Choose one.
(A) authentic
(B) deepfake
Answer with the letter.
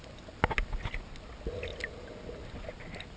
A